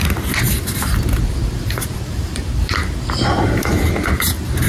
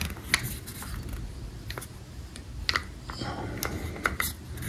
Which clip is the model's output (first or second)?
first